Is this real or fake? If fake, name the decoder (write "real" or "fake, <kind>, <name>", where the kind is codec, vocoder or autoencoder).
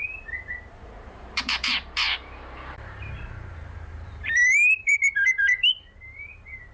fake, vocoder, BigVGAN v2